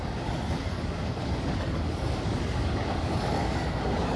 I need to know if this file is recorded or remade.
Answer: remade